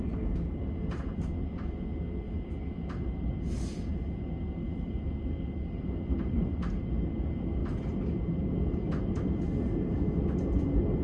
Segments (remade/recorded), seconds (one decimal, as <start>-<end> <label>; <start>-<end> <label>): 0.0-11.0 recorded